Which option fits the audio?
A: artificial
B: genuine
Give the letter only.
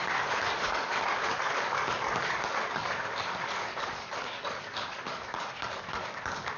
A